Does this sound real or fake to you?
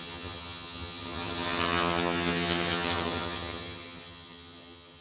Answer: fake